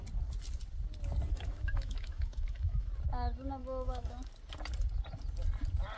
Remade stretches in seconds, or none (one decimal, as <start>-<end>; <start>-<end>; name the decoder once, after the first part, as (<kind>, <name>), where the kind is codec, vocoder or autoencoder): 1.3-2.9 (autoencoder, DAC-VAE); 3.6-4.3